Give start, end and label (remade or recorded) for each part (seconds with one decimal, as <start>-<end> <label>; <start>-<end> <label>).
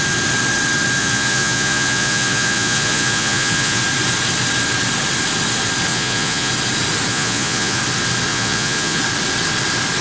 0.0-1.0 recorded; 1.0-3.8 remade; 3.8-5.9 recorded; 5.9-6.5 remade; 6.5-7.1 recorded; 7.1-7.8 remade; 7.8-8.3 recorded; 8.3-9.0 remade; 9.0-10.0 recorded